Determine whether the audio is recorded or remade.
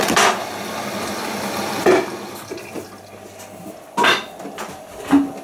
recorded